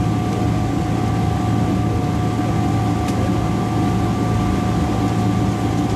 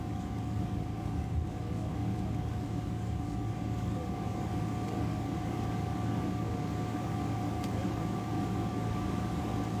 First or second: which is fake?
second